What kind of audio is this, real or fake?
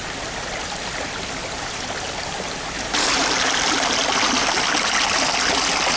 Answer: real